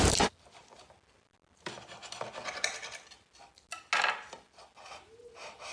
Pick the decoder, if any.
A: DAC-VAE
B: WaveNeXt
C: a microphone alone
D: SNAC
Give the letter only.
C